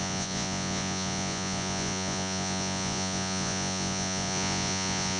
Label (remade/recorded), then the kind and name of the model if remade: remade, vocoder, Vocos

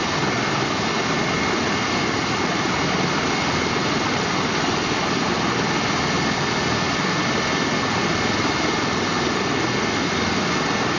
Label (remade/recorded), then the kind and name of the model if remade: recorded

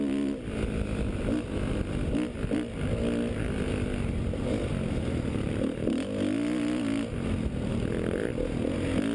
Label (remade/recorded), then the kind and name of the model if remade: recorded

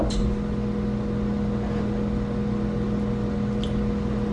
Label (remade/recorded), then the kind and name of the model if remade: recorded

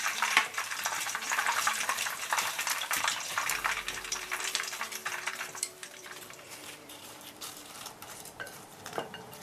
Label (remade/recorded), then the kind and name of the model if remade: remade, vocoder, BigVGAN v2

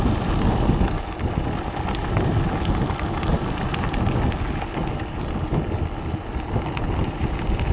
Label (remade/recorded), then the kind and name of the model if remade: recorded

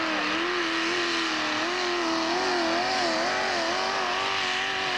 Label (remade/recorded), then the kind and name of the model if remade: recorded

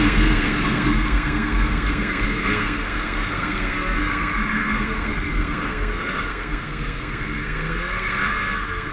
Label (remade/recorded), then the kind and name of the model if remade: remade, codec, SNAC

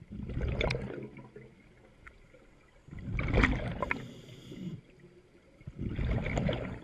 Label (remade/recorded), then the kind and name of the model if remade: recorded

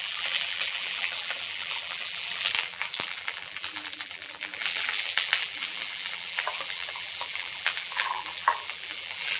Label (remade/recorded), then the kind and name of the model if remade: remade, vocoder, BigVGAN v2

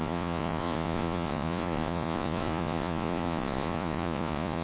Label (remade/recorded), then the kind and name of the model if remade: remade, vocoder, Vocos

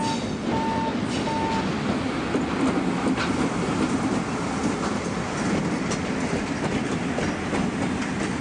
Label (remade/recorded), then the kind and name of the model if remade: recorded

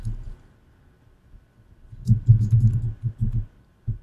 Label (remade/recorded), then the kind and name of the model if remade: recorded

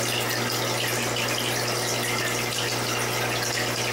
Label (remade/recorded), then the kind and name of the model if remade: recorded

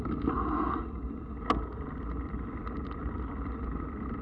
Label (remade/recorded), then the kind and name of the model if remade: recorded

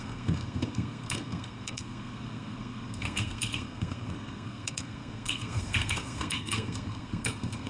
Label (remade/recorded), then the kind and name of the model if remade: remade, codec, SNAC